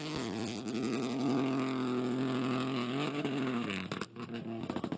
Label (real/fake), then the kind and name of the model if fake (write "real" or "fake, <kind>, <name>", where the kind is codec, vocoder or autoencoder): real